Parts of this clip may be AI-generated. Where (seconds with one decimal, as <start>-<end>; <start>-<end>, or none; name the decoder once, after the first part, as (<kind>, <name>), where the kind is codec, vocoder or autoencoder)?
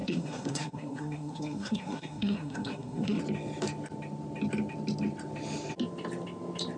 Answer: 0.0-3.2 (codec, SNAC)